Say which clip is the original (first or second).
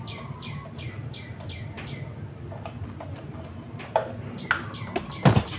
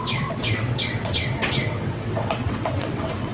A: first